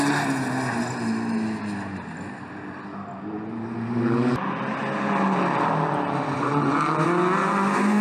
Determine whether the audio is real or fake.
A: real